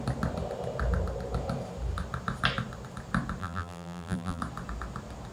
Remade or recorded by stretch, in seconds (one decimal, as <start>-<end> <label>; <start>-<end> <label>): 0.0-3.4 recorded; 3.4-4.4 remade; 4.4-5.3 recorded